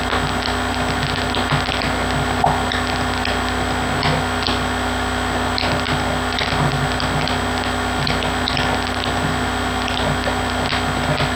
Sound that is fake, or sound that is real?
real